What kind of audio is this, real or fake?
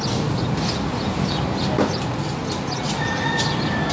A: real